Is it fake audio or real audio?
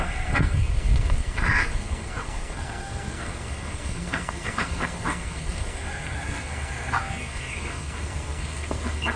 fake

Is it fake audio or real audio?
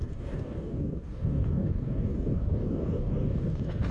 fake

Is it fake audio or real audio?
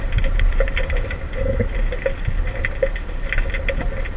real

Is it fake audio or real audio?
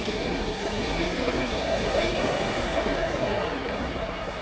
fake